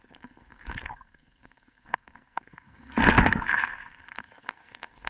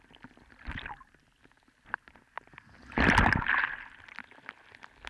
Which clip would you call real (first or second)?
second